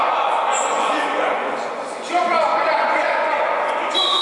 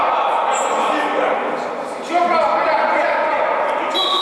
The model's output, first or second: first